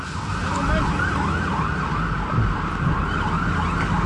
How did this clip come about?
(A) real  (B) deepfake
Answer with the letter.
A